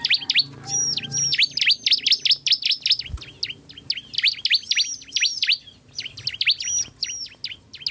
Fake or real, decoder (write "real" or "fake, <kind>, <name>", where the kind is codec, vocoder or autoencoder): real